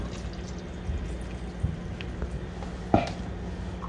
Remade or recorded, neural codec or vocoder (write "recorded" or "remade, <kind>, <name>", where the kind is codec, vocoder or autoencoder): recorded